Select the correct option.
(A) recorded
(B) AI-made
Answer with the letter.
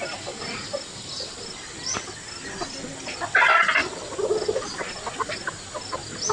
A